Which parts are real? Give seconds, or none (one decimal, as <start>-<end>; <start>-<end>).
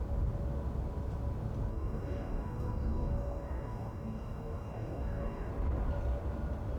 0.0-1.7; 5.5-6.8